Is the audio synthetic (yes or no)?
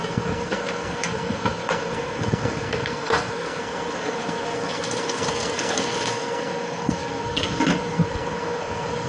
yes